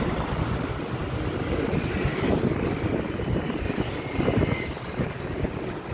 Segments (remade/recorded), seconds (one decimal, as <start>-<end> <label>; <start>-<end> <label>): 0.0-5.9 recorded